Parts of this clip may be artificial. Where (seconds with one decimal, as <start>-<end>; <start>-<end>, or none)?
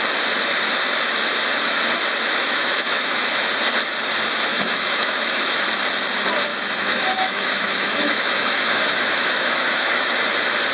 2.4-3.3; 4.5-5.6; 6.5-10.1